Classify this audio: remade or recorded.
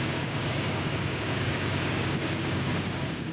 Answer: remade